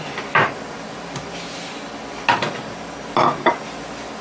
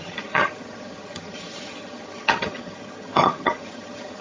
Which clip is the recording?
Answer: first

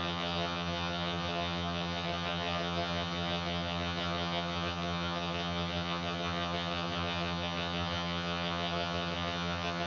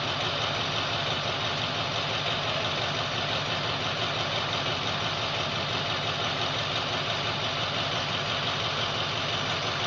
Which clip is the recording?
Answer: second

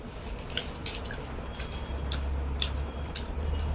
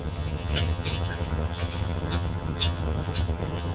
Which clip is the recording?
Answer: first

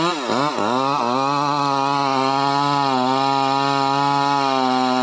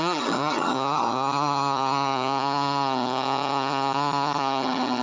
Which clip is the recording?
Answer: first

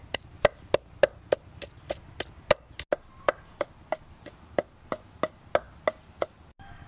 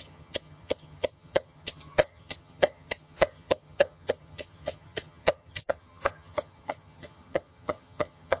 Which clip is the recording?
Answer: first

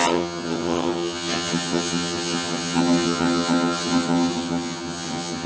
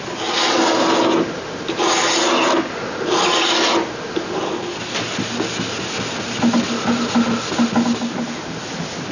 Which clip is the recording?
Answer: second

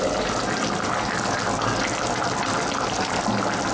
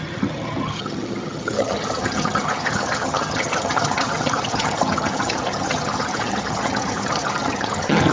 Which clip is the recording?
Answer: first